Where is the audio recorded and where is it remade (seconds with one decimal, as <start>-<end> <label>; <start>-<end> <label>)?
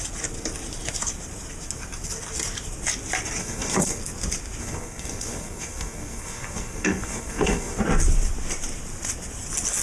0.0-3.4 recorded; 3.4-4.0 remade; 4.0-4.6 recorded; 4.6-7.8 remade; 7.8-9.8 recorded